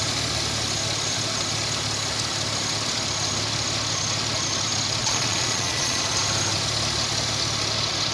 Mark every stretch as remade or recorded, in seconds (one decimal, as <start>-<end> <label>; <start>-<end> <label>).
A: 0.0-5.0 recorded; 5.0-6.0 remade; 6.0-8.1 recorded